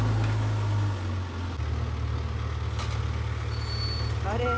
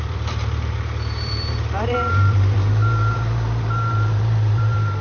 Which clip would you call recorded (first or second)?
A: first